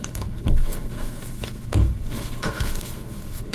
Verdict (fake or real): fake